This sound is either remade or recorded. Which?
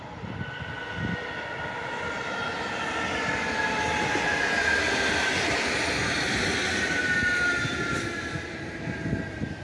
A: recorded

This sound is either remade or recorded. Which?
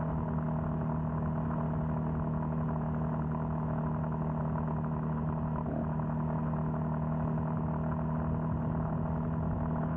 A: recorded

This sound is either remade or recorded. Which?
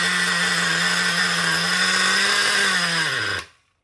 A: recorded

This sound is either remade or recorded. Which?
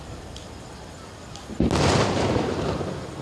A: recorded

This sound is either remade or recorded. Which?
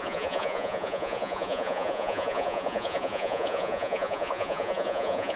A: remade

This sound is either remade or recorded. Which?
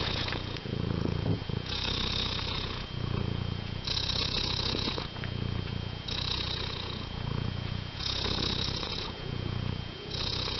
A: remade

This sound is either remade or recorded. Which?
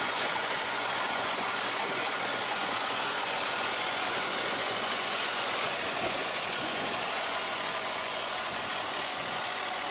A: remade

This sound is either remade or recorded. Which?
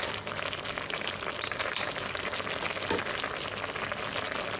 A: recorded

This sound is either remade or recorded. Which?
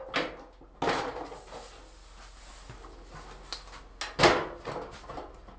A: recorded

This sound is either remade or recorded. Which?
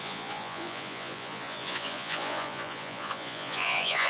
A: remade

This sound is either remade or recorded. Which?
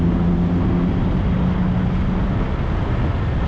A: recorded